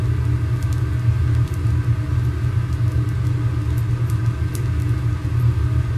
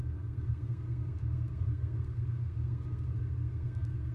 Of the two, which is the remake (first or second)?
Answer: second